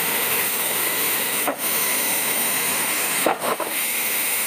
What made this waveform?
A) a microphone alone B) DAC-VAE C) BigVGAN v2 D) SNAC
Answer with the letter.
B